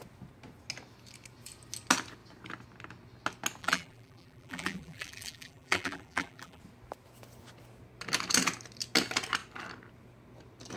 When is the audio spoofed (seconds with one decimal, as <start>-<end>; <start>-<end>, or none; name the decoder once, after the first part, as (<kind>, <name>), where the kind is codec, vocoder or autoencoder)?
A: 3.6-6.6 (vocoder, BigVGAN v2)